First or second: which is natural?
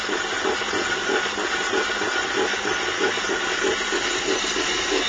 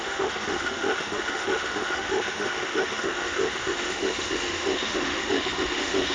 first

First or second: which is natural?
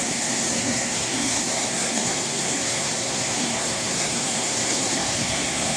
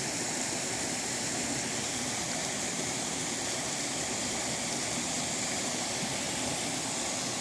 second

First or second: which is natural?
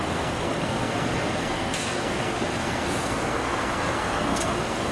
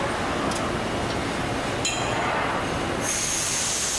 second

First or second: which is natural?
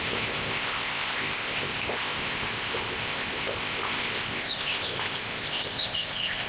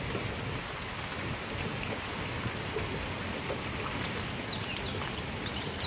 second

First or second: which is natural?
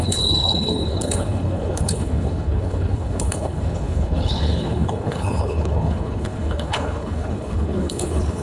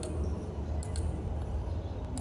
second